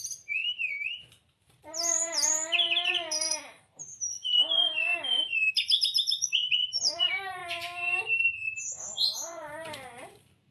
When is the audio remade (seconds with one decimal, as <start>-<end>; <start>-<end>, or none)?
0.0-7.4; 8.0-10.5